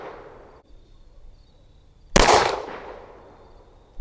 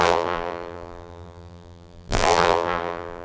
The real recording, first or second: first